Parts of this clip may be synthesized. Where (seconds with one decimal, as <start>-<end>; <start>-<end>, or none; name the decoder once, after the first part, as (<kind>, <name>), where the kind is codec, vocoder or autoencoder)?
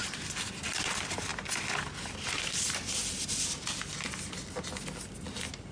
none